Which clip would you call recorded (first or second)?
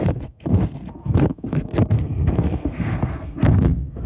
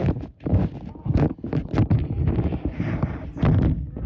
second